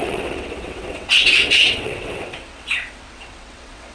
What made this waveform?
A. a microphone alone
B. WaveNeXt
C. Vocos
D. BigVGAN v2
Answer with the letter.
B